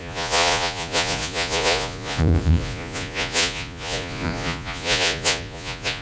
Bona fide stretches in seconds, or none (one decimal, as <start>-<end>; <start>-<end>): none